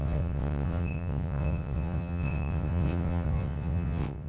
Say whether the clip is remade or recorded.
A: remade